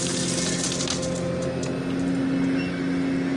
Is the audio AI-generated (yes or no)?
no